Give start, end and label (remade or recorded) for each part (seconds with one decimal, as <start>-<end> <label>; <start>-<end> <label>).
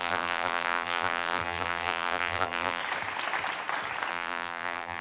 0.0-2.8 remade; 2.8-4.1 recorded; 4.1-5.0 remade